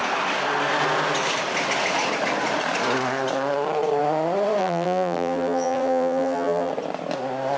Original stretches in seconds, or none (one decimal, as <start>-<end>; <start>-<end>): 0.0-4.6; 6.7-7.6